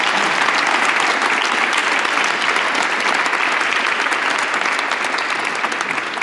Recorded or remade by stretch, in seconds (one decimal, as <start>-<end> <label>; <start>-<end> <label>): 0.0-6.2 recorded